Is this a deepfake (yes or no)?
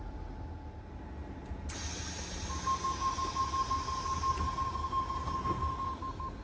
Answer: no